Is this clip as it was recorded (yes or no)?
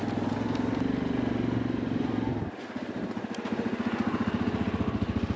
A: yes